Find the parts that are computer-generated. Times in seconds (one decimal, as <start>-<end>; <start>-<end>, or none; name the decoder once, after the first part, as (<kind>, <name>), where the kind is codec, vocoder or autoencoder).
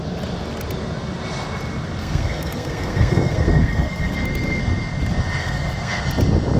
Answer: 2.0-4.6 (codec, SNAC); 5.4-6.0